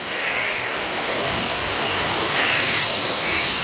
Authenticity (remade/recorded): remade